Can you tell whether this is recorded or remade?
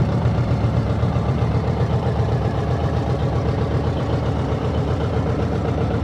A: remade